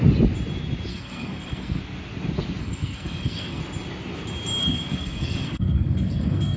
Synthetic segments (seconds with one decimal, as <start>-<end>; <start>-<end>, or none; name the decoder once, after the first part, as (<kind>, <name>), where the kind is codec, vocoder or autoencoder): 0.9-1.8 (codec, SNAC); 2.6-3.6; 4.6-6.6